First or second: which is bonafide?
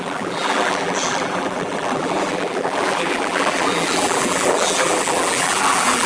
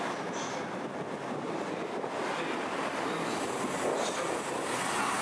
second